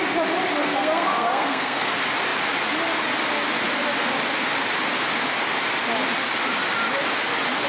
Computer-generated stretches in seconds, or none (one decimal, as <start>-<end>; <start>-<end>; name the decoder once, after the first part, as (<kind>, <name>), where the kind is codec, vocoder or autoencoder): 0.6-1.9 (codec, SNAC)